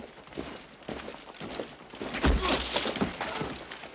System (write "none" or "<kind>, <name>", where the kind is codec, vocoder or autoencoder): none